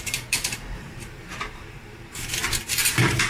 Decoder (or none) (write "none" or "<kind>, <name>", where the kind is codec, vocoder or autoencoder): vocoder, BigVGAN v2